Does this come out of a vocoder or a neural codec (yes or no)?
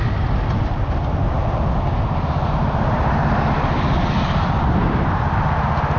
no